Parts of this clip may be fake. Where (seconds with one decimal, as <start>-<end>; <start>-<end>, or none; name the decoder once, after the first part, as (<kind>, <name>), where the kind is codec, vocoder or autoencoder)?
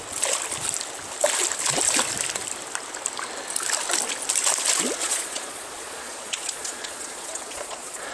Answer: 5.0-8.1 (vocoder, Vocos)